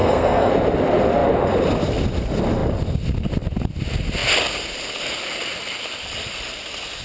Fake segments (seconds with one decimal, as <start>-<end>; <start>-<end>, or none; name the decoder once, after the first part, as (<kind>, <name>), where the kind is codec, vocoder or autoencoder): 0.0-0.5 (codec, SNAC)